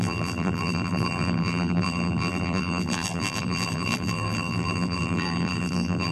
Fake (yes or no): yes